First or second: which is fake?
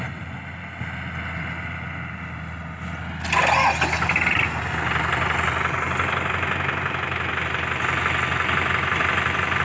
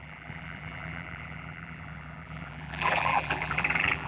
second